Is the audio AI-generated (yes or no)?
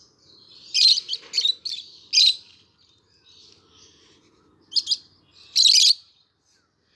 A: no